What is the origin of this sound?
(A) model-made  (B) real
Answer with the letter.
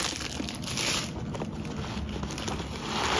B